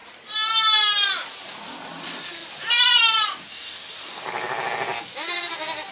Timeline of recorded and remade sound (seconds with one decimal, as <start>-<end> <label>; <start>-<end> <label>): 0.0-3.5 recorded; 3.5-4.2 remade; 4.2-5.9 recorded